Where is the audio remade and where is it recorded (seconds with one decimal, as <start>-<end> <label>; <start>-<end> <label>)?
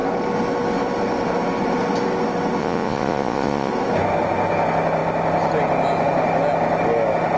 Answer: 0.0-2.6 recorded; 2.6-3.7 remade; 3.7-7.4 recorded